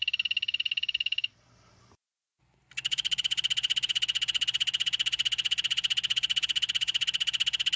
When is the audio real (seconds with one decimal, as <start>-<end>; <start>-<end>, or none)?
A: 0.0-7.8

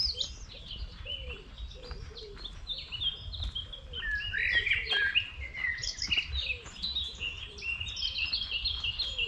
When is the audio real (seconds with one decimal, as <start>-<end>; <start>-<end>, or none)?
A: 0.0-9.3